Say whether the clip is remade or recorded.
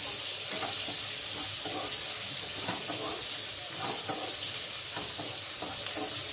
recorded